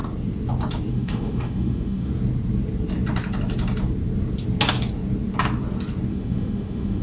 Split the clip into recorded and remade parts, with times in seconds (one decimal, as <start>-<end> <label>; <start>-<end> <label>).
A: 0.0-0.9 recorded; 0.9-2.1 remade; 2.1-6.1 recorded; 6.1-7.0 remade